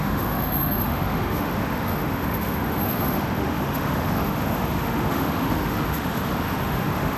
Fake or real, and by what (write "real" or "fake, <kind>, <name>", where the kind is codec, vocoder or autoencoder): fake, autoencoder, DAC-VAE